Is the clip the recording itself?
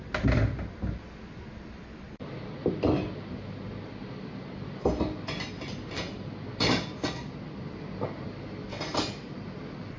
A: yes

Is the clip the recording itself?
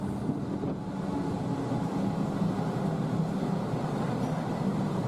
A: yes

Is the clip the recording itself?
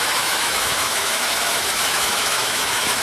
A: no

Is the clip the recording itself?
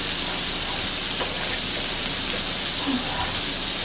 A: yes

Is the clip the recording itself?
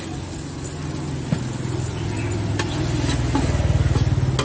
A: yes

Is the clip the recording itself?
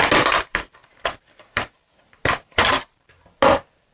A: yes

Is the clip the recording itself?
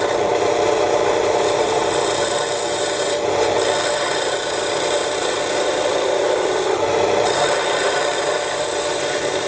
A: yes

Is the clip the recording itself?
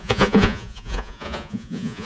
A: no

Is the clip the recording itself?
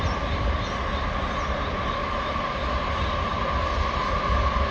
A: yes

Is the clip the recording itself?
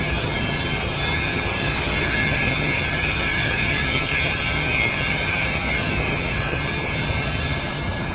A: no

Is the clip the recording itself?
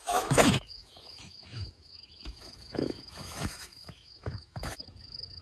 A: no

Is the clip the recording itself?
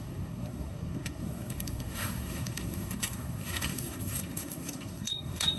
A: no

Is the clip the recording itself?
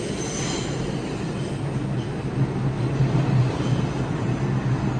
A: yes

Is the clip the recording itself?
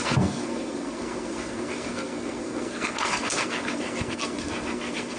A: no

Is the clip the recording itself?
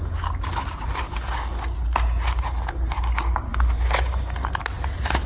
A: yes